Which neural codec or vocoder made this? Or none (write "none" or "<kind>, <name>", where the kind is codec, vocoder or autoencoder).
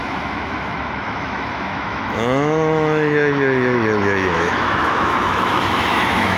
autoencoder, DAC-VAE